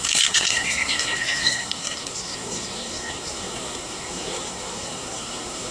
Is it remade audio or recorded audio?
remade